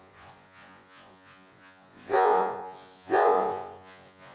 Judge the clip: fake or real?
fake